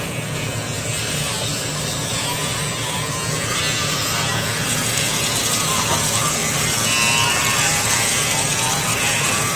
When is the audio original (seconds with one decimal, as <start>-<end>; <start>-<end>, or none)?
0.5-4.3; 6.4-7.6